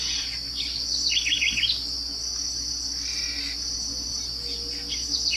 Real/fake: real